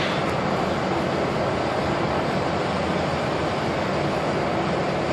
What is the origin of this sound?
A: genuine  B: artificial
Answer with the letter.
A